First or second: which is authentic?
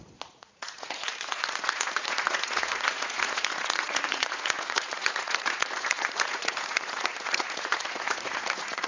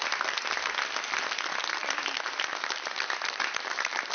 second